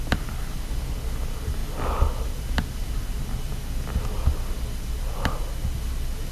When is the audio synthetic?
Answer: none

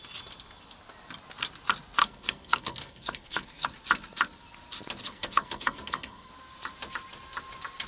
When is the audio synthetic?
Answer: 2.0-3.7 (codec, SNAC); 5.0-6.3

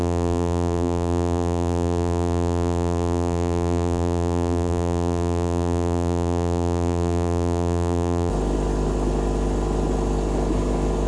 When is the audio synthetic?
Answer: 0.0-8.3 (vocoder, BigVGAN v2)

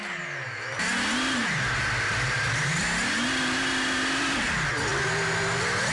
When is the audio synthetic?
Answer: none

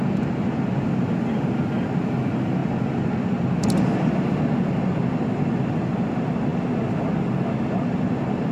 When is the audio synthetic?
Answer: none

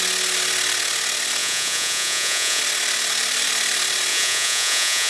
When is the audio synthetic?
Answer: 1.4-2.6 (vocoder, Vocos); 4.1-5.1

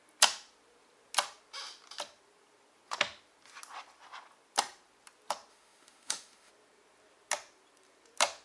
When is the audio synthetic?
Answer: 5.5-6.5 (autoencoder, DAC-VAE)